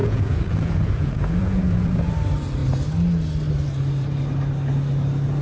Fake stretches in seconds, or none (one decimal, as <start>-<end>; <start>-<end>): 0.0-2.1